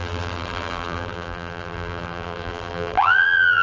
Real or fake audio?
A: fake